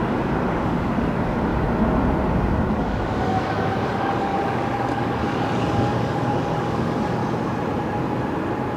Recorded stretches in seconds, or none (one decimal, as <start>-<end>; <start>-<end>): 1.5-2.7; 7.2-8.8